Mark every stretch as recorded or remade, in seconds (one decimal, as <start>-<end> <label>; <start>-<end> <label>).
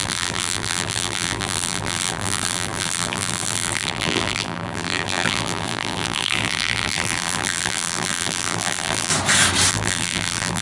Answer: 0.0-9.1 remade; 9.1-9.7 recorded; 9.7-10.6 remade